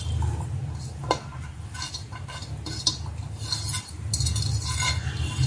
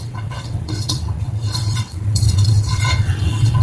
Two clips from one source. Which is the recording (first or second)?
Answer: first